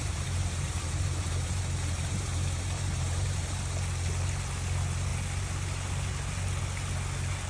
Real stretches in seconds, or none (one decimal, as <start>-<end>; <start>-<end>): 3.4-7.5